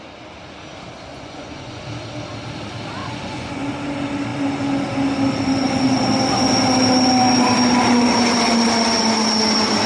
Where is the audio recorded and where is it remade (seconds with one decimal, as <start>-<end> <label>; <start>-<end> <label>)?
0.0-1.1 recorded; 1.1-1.8 remade; 1.8-3.0 recorded; 3.0-3.7 remade; 3.7-9.9 recorded